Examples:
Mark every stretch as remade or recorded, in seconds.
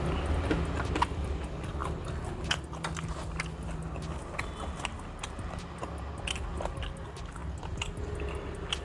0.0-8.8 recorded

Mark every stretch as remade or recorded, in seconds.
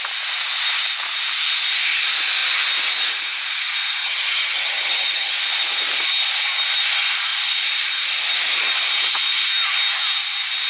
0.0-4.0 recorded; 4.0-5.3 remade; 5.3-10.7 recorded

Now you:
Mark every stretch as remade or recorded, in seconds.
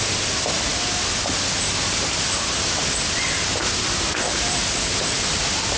0.0-0.7 remade; 0.7-4.2 recorded; 4.2-5.8 remade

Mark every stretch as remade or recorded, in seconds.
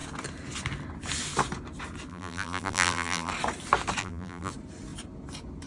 0.0-2.1 recorded; 2.1-3.3 remade; 3.3-4.0 recorded; 4.0-4.5 remade; 4.5-5.7 recorded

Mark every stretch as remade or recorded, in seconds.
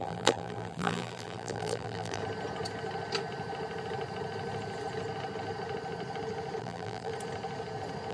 0.0-2.2 remade; 2.2-6.6 recorded; 6.6-7.1 remade; 7.1-8.1 recorded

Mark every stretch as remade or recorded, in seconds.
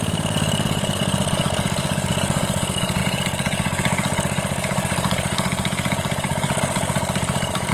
0.0-7.7 remade